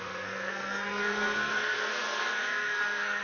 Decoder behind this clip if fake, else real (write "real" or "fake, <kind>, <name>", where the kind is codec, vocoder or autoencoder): fake, codec, SNAC